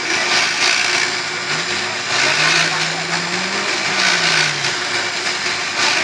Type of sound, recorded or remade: recorded